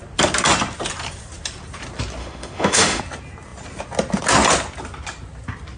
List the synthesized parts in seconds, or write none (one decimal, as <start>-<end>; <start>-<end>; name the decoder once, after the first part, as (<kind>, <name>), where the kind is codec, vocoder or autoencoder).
2.2-3.0 (autoencoder, DAC-VAE)